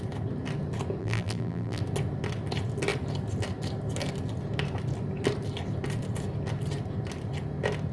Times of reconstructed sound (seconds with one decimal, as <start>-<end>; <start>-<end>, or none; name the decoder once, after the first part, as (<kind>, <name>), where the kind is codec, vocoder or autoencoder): 1.0-1.8 (vocoder, BigVGAN v2)